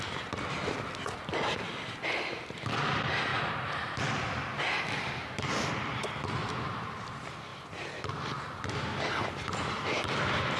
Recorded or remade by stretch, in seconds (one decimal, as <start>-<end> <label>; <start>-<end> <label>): 0.0-10.6 recorded